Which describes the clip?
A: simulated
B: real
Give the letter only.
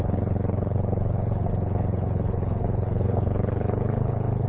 A